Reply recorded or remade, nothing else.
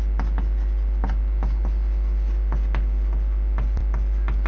recorded